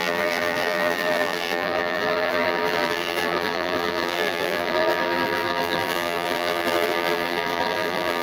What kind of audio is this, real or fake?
fake